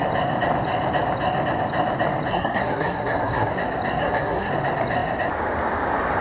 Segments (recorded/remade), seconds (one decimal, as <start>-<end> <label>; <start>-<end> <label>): 0.0-2.3 recorded; 2.3-3.5 remade; 3.5-4.0 recorded; 4.0-4.5 remade; 4.5-6.2 recorded